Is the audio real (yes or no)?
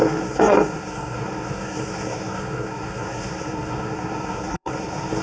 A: no